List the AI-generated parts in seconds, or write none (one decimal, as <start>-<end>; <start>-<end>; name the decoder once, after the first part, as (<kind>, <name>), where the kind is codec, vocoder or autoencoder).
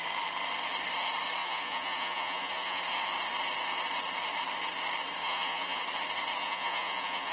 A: 1.4-2.8 (vocoder, Vocos); 5.2-5.8; 6.4-7.3